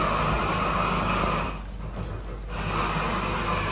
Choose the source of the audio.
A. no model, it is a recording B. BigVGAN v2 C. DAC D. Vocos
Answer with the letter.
A